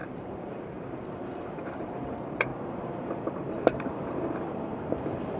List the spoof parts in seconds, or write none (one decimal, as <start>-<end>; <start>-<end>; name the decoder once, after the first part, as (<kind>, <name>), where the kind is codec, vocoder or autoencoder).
0.0-5.4 (vocoder, BigVGAN v2)